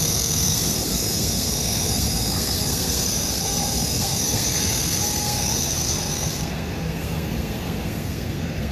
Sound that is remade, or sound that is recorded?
remade